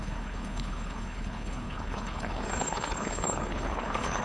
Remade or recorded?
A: remade